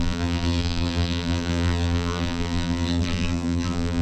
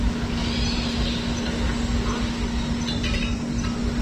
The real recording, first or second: second